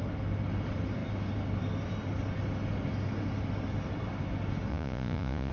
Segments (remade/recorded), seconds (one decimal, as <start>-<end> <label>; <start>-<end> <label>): 0.0-4.7 recorded; 4.7-5.5 remade